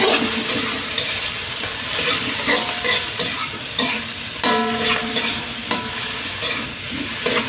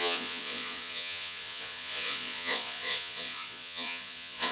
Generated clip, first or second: second